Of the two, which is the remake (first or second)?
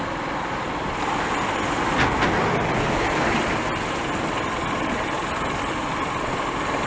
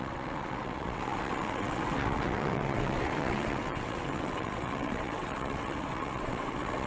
second